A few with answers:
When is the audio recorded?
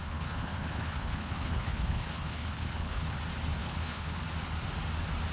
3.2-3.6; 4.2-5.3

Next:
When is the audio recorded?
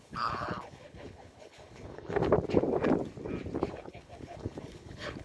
2.2-3.7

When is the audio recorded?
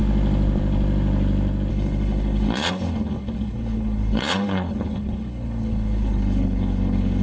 0.0-1.7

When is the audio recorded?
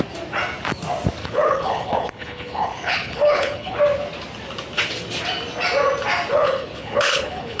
0.0-1.2; 3.8-6.3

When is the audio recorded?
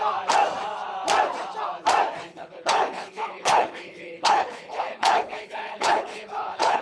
0.0-2.3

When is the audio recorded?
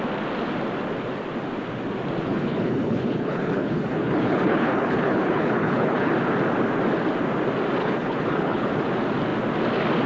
0.0-2.3; 6.1-7.8; 8.7-10.1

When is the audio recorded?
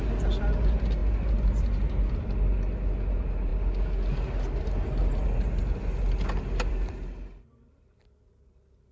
0.0-8.9